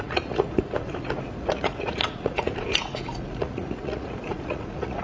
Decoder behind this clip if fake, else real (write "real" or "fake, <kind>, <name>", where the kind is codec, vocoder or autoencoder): fake, vocoder, Vocos